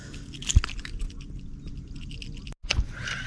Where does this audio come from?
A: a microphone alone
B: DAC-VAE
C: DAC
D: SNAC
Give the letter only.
A